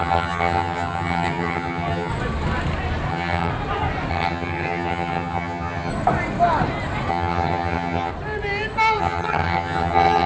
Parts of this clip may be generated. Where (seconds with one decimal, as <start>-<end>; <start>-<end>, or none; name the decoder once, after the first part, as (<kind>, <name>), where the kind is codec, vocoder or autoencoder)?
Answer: 0.0-2.1 (vocoder, HiFi-GAN); 3.1-3.5; 4.1-5.9; 7.1-8.1; 9.0-10.3